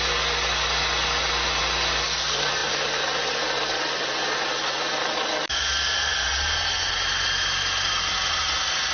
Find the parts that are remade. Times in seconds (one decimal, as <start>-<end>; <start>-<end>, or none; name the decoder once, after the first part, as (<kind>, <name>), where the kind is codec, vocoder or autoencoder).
none